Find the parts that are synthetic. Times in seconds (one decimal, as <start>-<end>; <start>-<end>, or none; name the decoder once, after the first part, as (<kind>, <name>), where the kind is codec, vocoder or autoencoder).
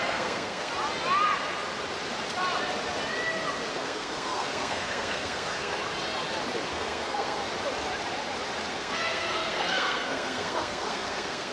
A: 0.0-0.7 (codec, SNAC); 3.7-5.8; 6.7-7.4; 8.7-11.5